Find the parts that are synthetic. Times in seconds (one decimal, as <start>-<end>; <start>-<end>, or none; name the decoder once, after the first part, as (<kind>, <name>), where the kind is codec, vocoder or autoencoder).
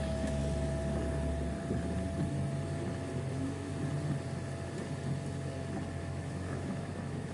0.0-0.4 (autoencoder, DAC-VAE); 3.3-3.7; 6.0-7.3